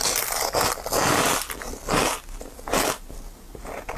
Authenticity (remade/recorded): recorded